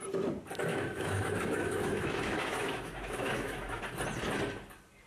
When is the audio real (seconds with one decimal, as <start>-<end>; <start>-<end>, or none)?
0.0-0.7; 3.8-5.1